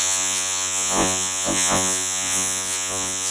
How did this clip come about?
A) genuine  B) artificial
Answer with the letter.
B